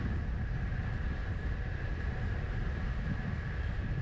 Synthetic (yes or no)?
no